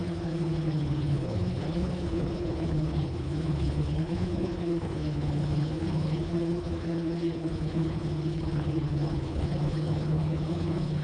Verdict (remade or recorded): remade